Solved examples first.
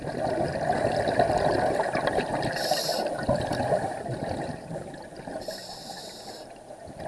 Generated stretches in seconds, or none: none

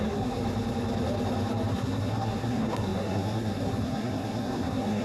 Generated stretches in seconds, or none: 0.0-0.4 (codec, SNAC); 1.7-5.0